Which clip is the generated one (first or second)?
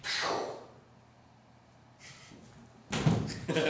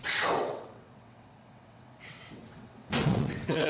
second